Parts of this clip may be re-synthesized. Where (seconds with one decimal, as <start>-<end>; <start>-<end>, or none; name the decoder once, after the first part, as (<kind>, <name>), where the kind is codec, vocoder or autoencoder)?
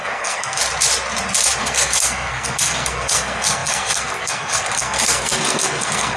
0.0-0.6 (codec, SNAC); 1.6-6.2